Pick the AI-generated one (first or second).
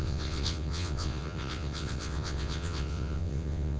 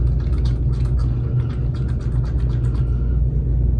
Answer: first